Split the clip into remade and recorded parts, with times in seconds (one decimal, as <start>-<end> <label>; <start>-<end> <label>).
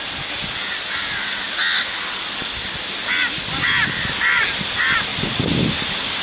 0.0-6.2 recorded